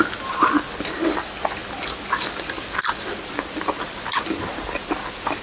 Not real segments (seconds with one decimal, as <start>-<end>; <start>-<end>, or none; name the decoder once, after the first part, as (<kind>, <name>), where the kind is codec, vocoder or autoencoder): none